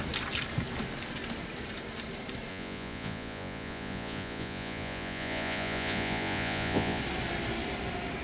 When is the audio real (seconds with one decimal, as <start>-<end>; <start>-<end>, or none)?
0.0-2.5; 7.0-8.2